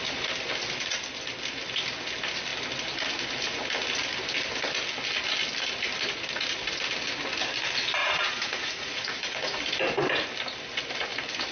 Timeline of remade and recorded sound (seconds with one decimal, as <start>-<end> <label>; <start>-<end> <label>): 0.0-8.0 recorded; 8.0-9.6 remade; 9.6-11.5 recorded